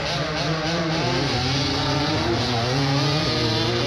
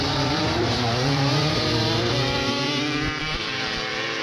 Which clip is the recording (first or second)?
first